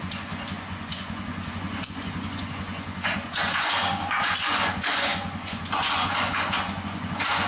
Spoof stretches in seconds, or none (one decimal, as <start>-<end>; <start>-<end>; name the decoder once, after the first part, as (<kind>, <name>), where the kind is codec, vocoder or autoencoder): 0.0-7.5 (vocoder, Vocos)